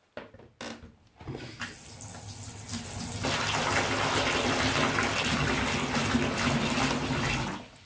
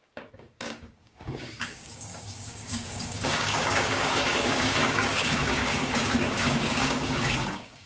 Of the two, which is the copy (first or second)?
second